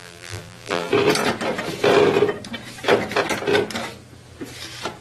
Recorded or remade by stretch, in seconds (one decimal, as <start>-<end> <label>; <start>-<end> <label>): 0.0-0.9 remade; 0.9-5.0 recorded